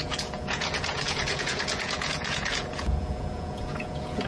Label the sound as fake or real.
fake